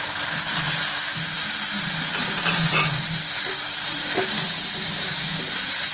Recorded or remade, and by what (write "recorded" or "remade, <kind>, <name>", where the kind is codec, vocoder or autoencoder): recorded